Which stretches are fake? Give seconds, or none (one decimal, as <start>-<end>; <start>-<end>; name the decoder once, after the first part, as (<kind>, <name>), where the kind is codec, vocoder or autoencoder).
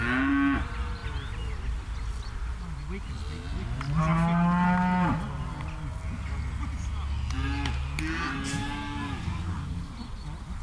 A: 8.6-9.9 (codec, DAC)